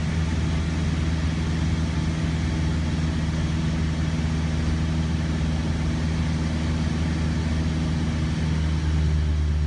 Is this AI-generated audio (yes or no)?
no